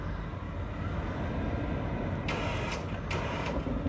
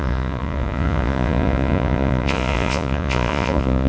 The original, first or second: first